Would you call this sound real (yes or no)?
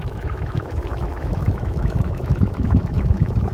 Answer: no